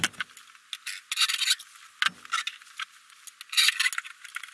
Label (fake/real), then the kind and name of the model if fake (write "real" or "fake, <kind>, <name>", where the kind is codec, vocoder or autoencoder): real